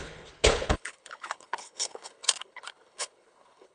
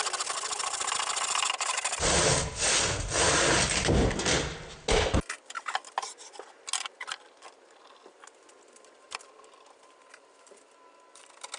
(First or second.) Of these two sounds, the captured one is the second